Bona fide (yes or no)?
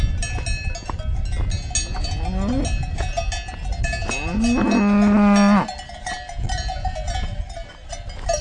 yes